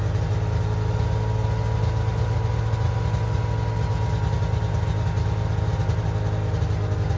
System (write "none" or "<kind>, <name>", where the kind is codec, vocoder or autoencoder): none